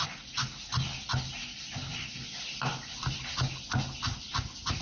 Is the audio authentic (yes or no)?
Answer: yes